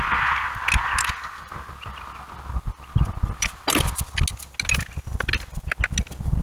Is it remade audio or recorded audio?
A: recorded